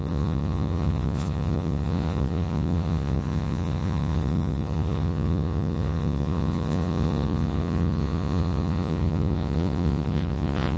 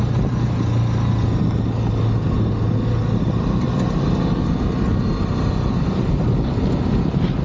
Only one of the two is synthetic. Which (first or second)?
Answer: first